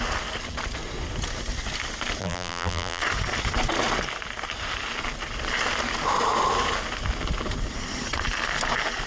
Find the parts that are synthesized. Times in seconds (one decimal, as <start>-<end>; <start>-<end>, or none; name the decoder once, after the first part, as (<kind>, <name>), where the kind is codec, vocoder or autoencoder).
2.2-3.0 (vocoder, BigVGAN v2)